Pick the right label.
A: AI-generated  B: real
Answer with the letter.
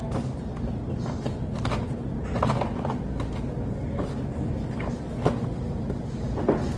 B